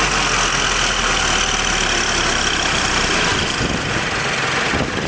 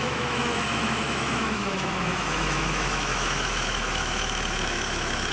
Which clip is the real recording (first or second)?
first